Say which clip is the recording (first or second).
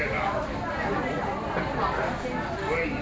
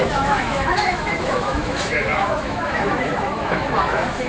first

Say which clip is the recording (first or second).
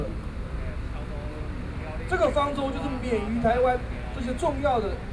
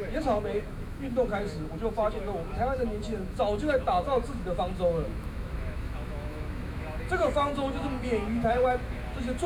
first